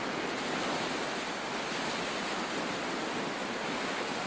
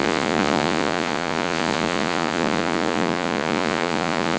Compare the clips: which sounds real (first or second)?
first